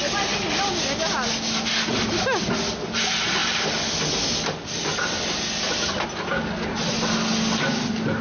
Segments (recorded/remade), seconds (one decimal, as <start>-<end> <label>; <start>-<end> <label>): 0.0-8.2 recorded